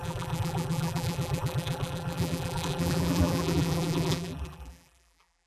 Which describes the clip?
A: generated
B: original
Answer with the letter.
A